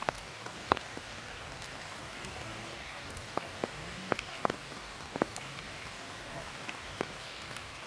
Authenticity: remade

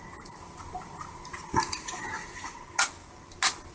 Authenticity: recorded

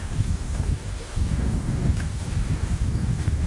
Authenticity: remade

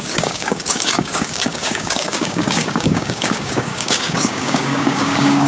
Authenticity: remade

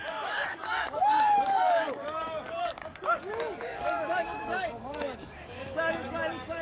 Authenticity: remade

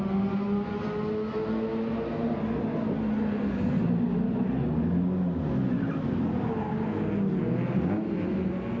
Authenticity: recorded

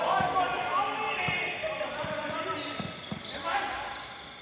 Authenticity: recorded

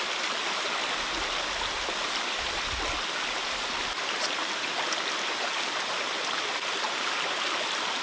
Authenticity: recorded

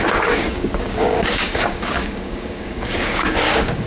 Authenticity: remade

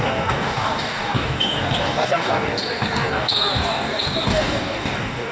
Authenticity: remade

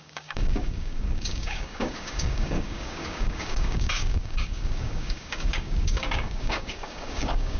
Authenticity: remade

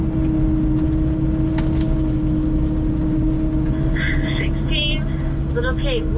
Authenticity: recorded